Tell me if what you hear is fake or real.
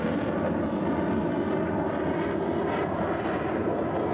real